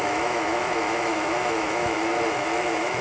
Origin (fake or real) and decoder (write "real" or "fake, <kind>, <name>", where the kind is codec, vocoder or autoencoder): fake, autoencoder, DAC-VAE